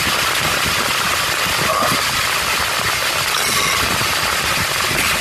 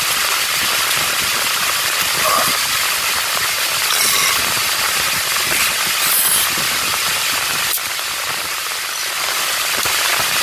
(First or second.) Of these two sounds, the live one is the first